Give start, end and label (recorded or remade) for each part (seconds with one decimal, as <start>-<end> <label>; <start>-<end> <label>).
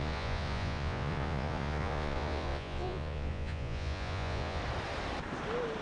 0.0-4.6 remade; 4.6-5.8 recorded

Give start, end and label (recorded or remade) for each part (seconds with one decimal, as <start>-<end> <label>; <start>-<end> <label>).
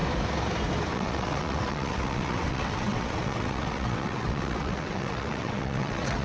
0.0-0.9 recorded; 0.9-6.2 remade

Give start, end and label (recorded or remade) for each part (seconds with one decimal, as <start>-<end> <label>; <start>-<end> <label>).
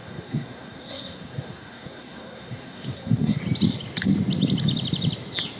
0.0-3.4 remade; 3.4-5.6 recorded